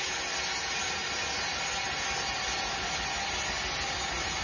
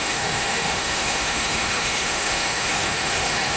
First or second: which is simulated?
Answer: second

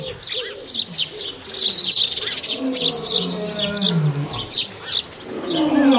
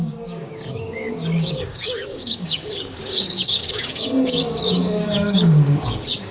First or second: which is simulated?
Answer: second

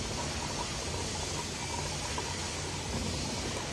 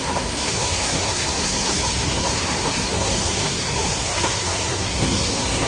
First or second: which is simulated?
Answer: second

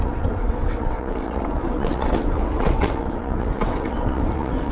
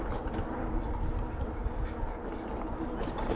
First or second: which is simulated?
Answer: first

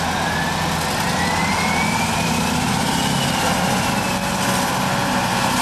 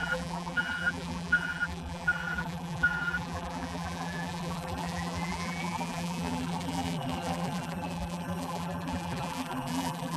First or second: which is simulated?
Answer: second